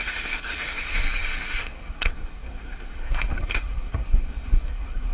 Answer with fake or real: fake